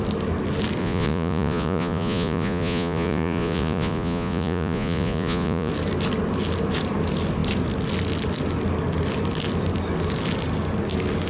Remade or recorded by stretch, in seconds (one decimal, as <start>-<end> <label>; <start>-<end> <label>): 0.0-0.8 recorded; 0.8-5.7 remade; 5.7-11.3 recorded